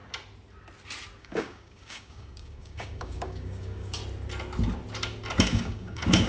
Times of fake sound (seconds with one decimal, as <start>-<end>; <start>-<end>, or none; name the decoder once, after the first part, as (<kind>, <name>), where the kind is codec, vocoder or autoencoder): 1.2-4.0 (codec, DAC); 5.4-6.3